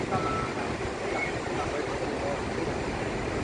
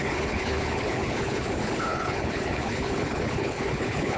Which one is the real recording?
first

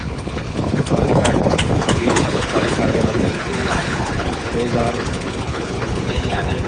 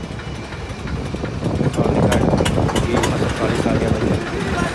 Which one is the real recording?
second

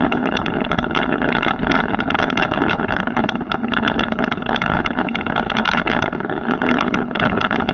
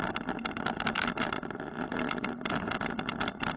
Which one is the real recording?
second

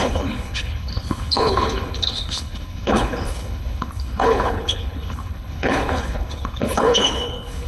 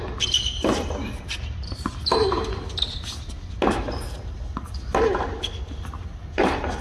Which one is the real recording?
second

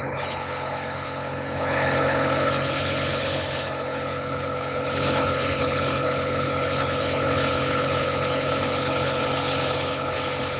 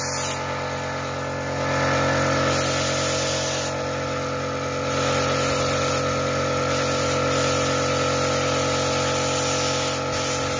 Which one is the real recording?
second